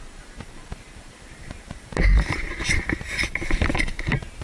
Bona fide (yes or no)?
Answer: no